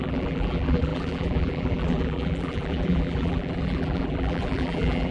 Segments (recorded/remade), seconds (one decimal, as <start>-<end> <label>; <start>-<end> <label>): 0.0-5.1 remade